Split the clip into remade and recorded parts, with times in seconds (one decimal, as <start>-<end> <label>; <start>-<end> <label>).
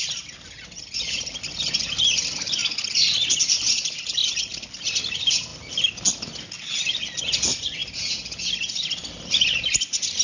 0.0-10.2 recorded